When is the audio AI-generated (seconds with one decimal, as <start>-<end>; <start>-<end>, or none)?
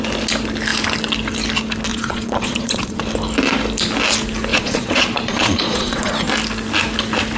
1.9-3.0; 4.5-6.1